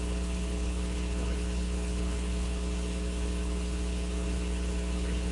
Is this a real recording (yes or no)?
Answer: no